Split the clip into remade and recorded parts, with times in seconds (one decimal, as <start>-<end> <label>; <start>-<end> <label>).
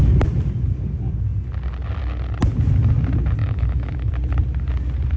0.0-3.4 recorded; 3.4-4.1 remade; 4.1-5.2 recorded